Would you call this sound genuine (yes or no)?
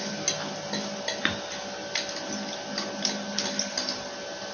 yes